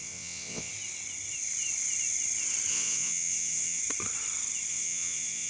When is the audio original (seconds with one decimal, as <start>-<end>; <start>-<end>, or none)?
0.7-2.7; 3.8-4.7